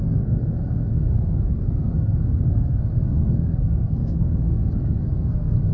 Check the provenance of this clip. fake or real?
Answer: fake